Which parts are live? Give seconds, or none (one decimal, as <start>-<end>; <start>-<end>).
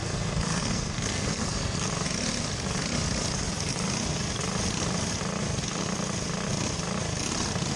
1.9-7.8